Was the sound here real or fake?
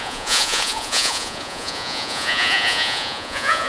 fake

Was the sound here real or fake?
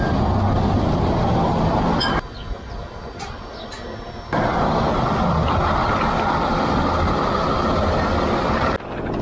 real